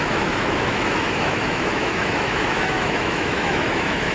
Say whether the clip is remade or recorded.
remade